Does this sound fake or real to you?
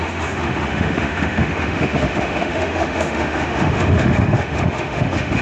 fake